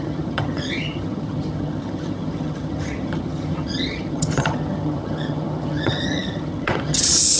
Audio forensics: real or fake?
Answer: fake